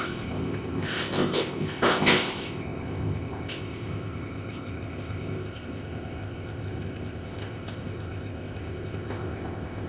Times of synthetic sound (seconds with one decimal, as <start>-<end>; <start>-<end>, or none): 0.0-9.9